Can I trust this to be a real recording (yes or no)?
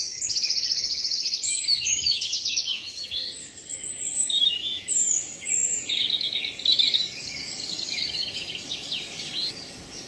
no